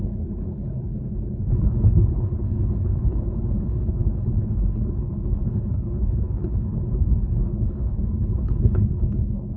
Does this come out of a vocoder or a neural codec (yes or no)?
yes